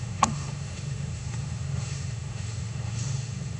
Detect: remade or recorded remade